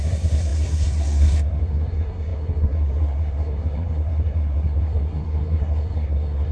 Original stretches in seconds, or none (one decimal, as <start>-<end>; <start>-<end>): none